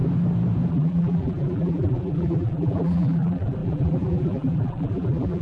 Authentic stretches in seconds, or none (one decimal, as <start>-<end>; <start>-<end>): 0.0-0.7